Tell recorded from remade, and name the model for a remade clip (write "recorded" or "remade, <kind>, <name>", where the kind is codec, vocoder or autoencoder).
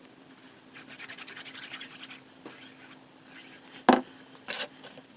recorded